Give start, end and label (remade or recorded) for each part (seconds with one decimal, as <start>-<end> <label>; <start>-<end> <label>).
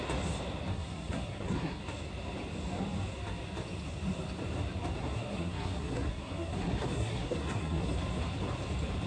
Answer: 0.0-0.7 recorded; 0.7-1.8 remade; 1.8-5.0 recorded; 5.0-7.9 remade; 7.9-9.1 recorded